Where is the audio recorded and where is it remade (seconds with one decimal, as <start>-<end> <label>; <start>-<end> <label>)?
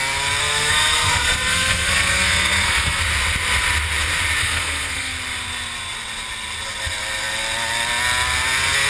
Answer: 0.0-0.4 recorded; 0.4-3.0 remade; 3.0-4.4 recorded; 4.4-5.1 remade; 5.1-8.9 recorded